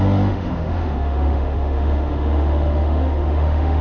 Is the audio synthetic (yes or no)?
yes